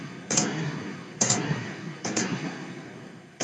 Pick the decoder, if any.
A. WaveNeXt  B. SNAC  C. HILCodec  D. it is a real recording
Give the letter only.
B